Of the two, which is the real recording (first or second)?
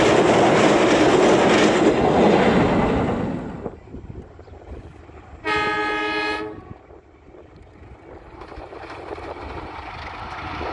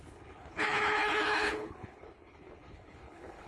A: first